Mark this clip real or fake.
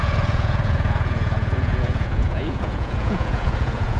fake